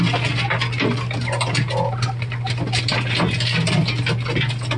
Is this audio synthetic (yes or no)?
no